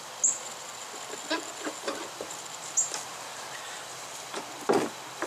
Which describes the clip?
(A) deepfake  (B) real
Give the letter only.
B